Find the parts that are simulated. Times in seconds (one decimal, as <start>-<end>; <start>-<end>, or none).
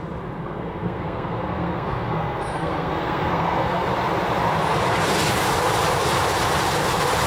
0.4-3.9